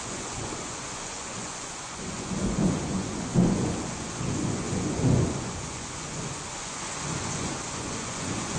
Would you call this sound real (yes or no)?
no